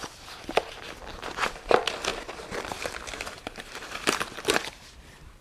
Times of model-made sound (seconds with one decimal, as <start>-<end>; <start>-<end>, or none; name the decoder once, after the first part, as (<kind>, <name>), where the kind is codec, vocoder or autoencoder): 2.1-5.4 (vocoder, BigVGAN v2)